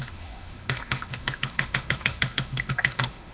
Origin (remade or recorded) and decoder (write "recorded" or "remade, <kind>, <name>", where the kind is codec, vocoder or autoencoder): remade, autoencoder, DAC-VAE